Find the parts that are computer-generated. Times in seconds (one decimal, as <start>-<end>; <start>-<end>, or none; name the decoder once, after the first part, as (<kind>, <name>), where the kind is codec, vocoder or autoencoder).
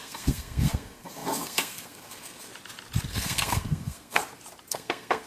0.0-2.5 (codec, SNAC); 3.1-4.2; 4.7-5.3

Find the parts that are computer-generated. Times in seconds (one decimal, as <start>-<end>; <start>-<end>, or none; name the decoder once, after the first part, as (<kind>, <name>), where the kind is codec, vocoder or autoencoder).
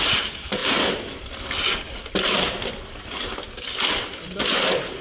none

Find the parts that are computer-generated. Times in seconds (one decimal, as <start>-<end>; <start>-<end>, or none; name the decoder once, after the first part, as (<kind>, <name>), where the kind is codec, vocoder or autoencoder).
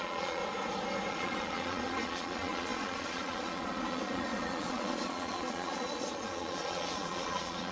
0.0-0.4 (vocoder, Vocos); 1.1-7.7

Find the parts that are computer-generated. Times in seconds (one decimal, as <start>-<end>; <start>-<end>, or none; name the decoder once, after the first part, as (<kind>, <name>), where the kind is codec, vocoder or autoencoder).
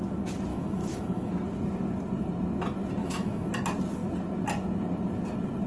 0.5-1.3 (autoencoder, DAC-VAE); 3.0-3.5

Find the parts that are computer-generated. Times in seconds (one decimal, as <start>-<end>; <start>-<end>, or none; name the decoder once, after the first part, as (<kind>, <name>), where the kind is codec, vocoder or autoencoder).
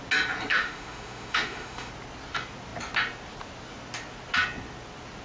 0.5-1.9 (autoencoder, DAC-VAE)